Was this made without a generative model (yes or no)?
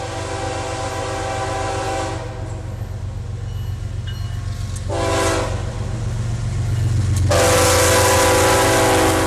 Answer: yes